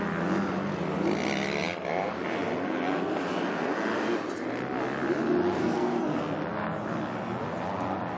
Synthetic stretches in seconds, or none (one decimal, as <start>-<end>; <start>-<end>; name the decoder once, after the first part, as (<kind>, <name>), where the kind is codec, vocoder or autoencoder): 5.6-6.2 (codec, SNAC)